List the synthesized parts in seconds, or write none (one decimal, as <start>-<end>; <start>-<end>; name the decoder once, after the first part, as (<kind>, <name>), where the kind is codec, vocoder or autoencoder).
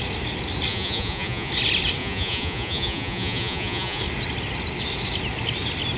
0.7-1.5 (vocoder, Vocos); 2.0-4.0